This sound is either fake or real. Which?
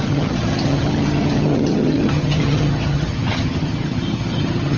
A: fake